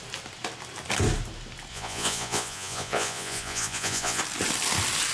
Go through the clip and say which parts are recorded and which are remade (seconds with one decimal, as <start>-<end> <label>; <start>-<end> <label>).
0.0-1.7 recorded; 1.7-4.2 remade; 4.2-5.1 recorded